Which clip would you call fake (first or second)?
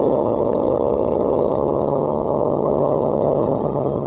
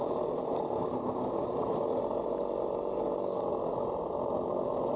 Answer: first